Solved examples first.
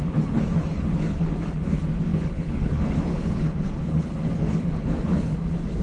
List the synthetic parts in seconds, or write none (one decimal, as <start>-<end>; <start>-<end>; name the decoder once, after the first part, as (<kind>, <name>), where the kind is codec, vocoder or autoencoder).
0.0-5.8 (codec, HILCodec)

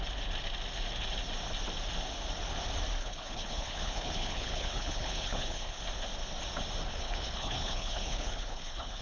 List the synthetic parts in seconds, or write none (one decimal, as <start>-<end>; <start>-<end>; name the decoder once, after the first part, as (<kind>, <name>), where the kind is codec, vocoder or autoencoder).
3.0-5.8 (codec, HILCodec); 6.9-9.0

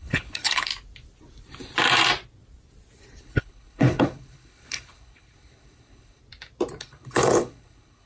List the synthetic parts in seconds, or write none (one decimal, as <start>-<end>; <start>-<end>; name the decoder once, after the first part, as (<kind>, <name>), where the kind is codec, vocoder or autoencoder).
0.0-0.7 (codec, HILCodec); 3.2-6.2; 6.8-8.1